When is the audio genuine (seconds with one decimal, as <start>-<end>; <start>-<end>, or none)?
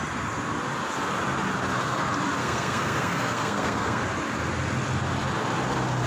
0.0-2.4; 4.0-6.1